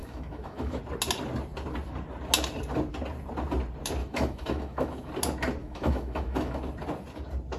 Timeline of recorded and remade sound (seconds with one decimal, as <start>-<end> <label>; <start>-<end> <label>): 0.0-0.8 remade; 0.8-4.0 recorded; 4.0-5.1 remade; 5.1-5.6 recorded; 5.6-6.6 remade; 6.6-7.6 recorded